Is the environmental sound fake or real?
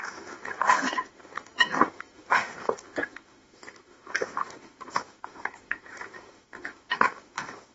fake